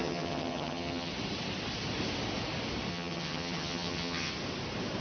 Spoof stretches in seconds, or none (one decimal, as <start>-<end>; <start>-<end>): 0.0-1.1; 2.9-4.3